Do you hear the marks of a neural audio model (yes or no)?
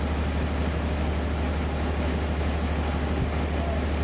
no